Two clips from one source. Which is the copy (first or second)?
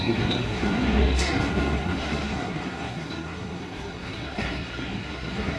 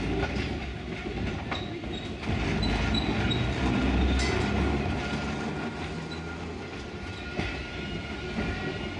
first